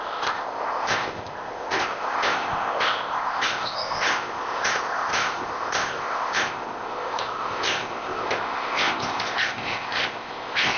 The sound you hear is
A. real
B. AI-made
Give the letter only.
B